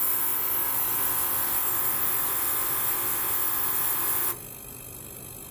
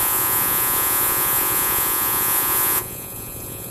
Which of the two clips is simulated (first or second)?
second